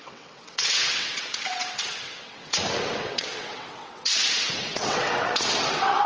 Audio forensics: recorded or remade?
remade